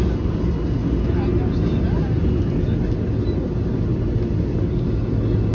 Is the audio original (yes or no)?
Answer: yes